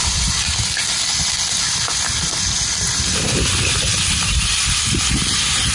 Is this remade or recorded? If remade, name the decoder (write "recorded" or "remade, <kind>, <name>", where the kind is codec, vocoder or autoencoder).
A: recorded